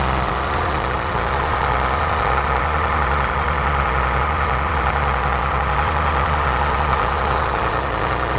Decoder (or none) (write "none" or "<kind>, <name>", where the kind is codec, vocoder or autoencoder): vocoder, Vocos